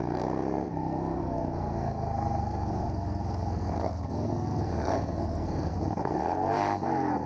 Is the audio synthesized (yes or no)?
yes